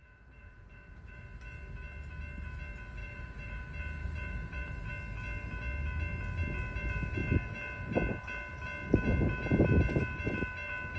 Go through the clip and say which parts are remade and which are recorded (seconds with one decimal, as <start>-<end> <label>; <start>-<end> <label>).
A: 0.0-1.2 remade; 1.2-3.0 recorded; 3.0-3.6 remade; 3.6-4.0 recorded; 4.0-4.9 remade; 4.9-11.0 recorded